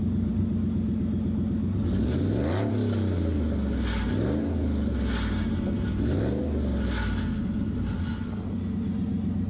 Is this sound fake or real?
real